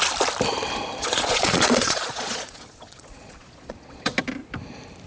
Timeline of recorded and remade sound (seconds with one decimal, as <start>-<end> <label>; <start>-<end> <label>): 0.0-1.0 recorded; 1.0-4.1 remade; 4.1-5.1 recorded